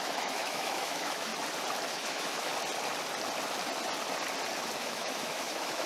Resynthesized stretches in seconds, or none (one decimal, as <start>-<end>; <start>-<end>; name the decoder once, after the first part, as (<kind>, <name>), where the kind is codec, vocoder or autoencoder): 0.0-1.3 (autoencoder, DAC-VAE); 1.9-2.5; 4.8-5.9